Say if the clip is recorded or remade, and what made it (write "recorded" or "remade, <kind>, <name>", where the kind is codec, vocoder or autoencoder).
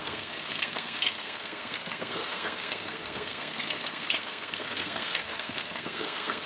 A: remade, codec, SNAC